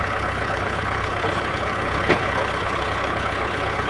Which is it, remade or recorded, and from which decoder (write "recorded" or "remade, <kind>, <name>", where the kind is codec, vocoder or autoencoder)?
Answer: remade, codec, HILCodec